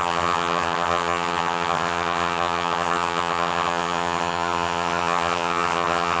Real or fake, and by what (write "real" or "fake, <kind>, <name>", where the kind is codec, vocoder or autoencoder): fake, vocoder, HiFi-GAN